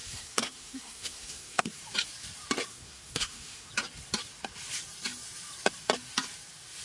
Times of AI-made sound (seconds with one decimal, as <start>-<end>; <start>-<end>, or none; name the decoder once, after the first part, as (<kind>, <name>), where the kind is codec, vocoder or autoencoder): 0.0-1.8 (codec, SNAC); 2.7-3.7